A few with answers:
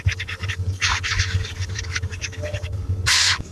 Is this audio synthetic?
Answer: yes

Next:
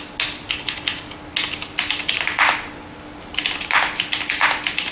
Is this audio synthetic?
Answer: no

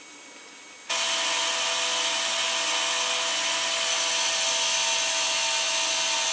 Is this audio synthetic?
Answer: no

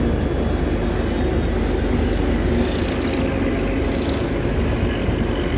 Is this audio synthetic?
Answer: no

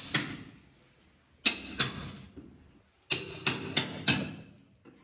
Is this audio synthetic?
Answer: no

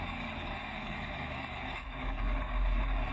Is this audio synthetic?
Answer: yes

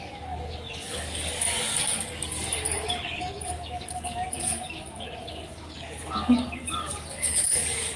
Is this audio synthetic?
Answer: yes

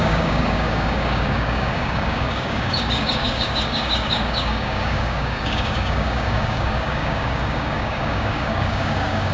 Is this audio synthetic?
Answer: yes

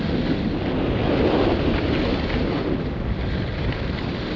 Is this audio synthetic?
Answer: no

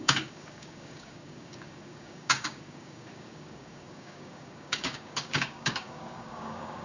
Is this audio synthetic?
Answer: yes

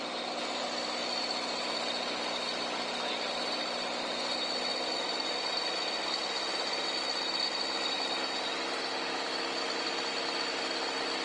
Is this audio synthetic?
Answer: no